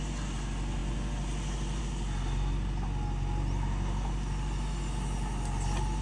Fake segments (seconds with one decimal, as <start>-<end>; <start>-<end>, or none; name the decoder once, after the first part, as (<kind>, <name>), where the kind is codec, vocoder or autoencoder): none